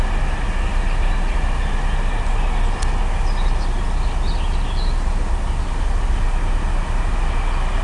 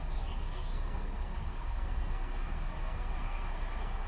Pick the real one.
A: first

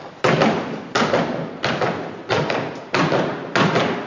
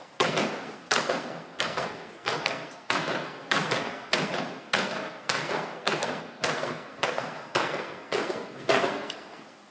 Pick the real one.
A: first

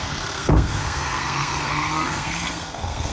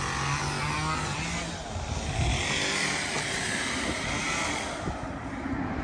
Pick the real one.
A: second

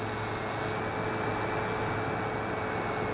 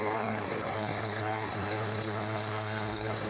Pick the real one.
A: first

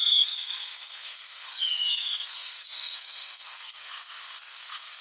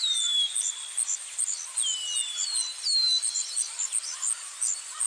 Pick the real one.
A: second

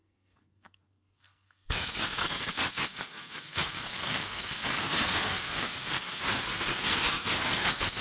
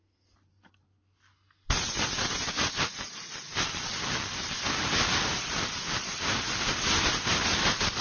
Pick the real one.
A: second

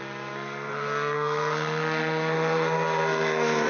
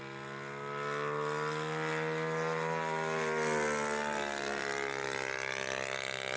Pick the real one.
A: second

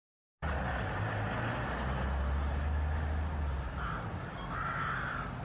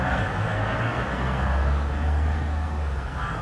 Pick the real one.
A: first